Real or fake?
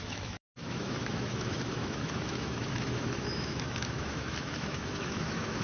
fake